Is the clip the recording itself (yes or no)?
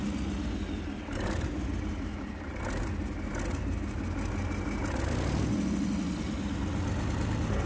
yes